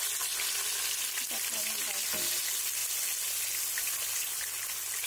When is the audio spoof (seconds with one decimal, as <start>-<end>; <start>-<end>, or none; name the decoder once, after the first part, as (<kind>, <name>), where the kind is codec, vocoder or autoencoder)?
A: none